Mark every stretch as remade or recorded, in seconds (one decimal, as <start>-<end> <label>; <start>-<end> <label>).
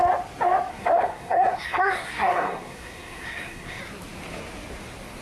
0.0-0.7 recorded; 0.7-3.8 remade; 3.8-5.2 recorded